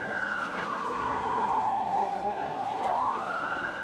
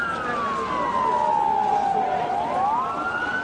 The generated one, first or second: first